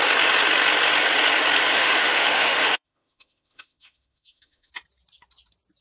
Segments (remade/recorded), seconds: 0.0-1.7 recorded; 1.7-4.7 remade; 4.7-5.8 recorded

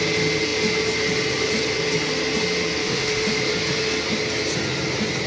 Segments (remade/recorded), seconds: 0.0-2.8 recorded; 2.8-3.5 remade; 3.5-5.3 recorded

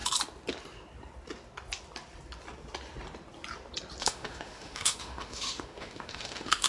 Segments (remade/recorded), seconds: 0.0-4.0 recorded; 4.0-6.7 remade

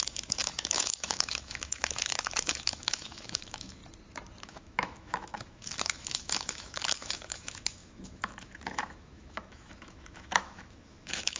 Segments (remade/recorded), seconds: 0.0-3.8 remade; 3.8-4.4 recorded; 4.4-11.4 remade

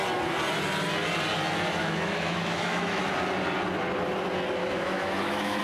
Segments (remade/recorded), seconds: 0.0-1.8 recorded; 1.8-3.1 remade; 3.1-4.6 recorded; 4.6-5.6 remade

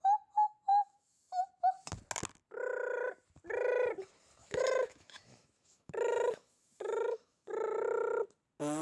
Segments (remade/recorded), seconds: 0.0-0.7 recorded; 0.7-1.4 remade; 1.4-4.4 recorded; 4.4-7.5 remade; 7.5-8.8 recorded

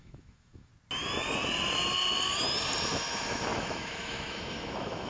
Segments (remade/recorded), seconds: 0.0-0.7 remade; 0.7-2.9 recorded; 2.9-5.1 remade

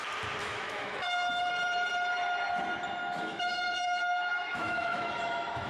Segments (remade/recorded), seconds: 0.0-0.4 recorded; 0.4-1.5 remade; 1.5-3.0 recorded; 3.0-5.7 remade